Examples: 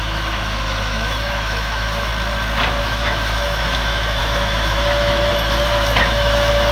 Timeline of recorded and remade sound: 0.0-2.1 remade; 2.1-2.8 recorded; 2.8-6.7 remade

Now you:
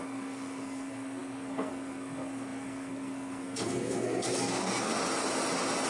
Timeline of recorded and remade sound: 0.0-4.9 remade; 4.9-5.9 recorded

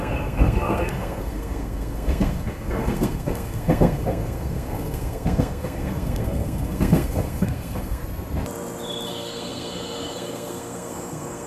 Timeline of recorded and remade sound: 0.0-8.0 remade; 8.0-9.1 recorded; 9.1-11.5 remade

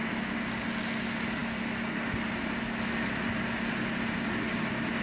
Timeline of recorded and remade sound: 0.0-5.0 recorded

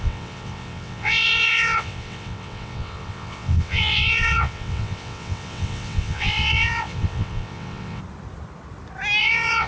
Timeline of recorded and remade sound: 0.0-8.0 remade; 8.0-9.2 recorded; 9.2-9.7 remade